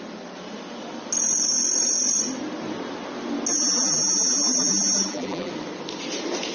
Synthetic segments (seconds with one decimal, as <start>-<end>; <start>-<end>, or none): 3.5-5.5